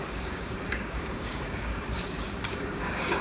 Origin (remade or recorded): remade